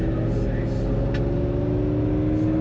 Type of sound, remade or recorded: recorded